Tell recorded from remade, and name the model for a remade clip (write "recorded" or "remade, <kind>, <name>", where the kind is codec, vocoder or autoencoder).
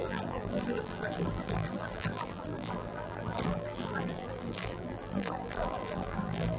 remade, vocoder, BigVGAN v2